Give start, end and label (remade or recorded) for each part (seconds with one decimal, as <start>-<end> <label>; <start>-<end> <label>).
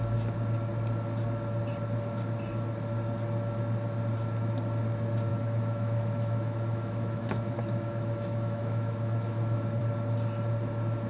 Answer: 0.0-5.3 recorded; 5.3-9.8 remade; 9.8-11.1 recorded